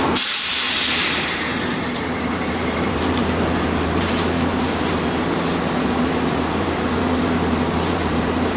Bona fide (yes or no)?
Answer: no